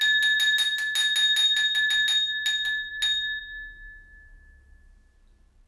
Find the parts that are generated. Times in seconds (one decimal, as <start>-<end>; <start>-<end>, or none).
none